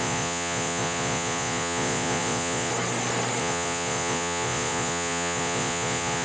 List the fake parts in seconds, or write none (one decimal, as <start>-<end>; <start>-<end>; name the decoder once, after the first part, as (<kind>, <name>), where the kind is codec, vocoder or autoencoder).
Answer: 0.0-2.7 (vocoder, Vocos); 3.4-6.2